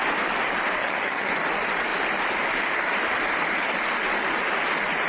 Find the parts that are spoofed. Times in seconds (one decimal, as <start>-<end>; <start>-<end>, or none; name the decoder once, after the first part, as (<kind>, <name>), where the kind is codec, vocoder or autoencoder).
0.8-1.3 (vocoder, HiFi-GAN)